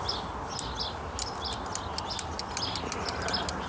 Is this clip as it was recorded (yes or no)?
yes